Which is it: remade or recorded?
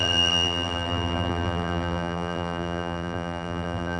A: remade